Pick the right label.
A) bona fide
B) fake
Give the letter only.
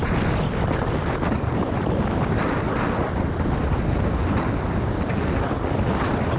A